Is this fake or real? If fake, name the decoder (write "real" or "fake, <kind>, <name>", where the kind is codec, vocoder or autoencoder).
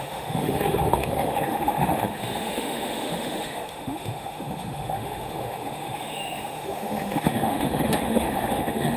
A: fake, autoencoder, DAC-VAE